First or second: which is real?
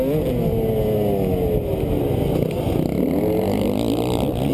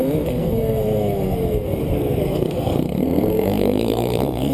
first